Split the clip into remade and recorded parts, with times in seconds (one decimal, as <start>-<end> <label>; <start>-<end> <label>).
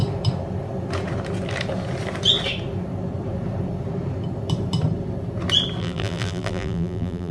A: 0.0-5.8 recorded; 5.8-7.3 remade